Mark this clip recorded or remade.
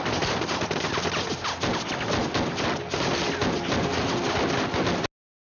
recorded